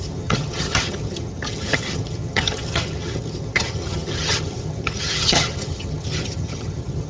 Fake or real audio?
fake